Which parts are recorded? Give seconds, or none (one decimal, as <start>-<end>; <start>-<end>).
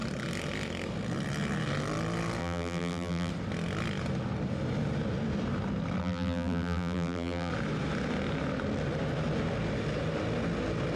0.0-2.4; 3.3-6.0; 7.5-11.0